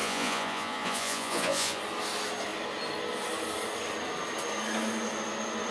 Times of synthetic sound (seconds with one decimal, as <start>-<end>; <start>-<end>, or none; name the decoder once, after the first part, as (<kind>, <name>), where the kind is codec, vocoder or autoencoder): 0.0-1.8 (vocoder, Vocos)

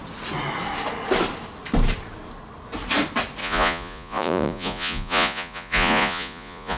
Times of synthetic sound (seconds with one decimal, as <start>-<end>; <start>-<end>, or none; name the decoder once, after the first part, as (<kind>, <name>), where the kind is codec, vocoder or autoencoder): 3.4-6.8 (vocoder, Vocos)

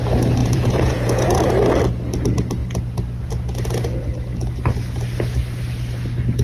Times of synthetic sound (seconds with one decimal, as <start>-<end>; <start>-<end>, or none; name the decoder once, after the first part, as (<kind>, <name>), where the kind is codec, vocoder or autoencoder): 0.4-1.5 (vocoder, Vocos)

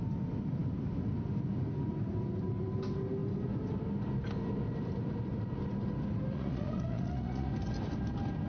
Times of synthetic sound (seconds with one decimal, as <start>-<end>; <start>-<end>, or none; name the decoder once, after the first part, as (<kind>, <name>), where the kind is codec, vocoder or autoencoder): 6.3-7.5 (vocoder, Vocos)

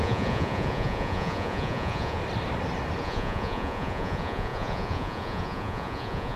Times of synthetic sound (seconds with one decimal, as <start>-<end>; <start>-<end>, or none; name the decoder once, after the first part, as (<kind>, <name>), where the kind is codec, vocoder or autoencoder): 0.0-2.2 (vocoder, Vocos); 3.0-6.4